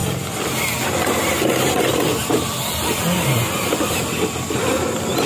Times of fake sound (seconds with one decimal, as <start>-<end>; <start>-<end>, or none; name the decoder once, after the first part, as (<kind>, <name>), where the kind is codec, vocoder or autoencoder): none